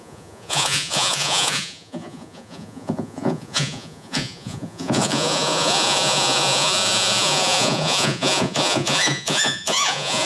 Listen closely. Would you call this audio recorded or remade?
remade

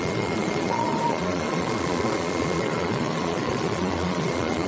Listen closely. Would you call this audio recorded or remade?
remade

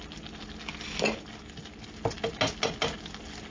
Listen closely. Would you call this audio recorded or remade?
recorded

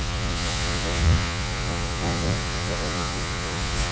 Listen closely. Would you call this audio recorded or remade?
remade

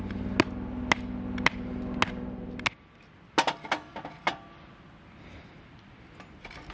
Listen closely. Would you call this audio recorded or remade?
recorded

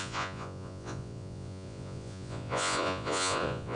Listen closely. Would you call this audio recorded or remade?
remade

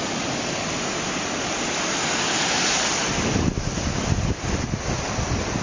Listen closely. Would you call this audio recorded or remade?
recorded